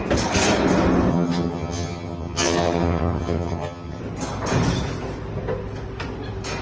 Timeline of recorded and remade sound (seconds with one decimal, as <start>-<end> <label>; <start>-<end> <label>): 0.0-1.1 recorded; 1.1-4.0 remade; 4.0-6.6 recorded